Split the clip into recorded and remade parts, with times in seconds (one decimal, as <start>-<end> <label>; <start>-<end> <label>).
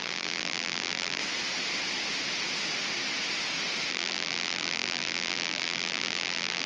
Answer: 0.0-1.2 remade; 1.2-3.9 recorded; 3.9-6.7 remade